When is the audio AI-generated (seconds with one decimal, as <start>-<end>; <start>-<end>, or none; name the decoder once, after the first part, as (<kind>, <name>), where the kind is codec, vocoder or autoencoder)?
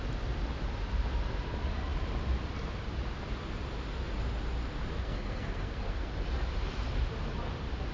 4.9-6.1 (codec, SNAC)